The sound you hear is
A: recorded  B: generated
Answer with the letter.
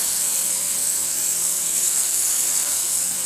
B